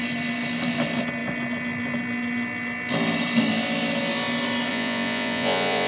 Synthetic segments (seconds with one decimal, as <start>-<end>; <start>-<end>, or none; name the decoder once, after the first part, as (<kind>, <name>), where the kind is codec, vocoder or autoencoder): 4.7-5.9 (vocoder, Vocos)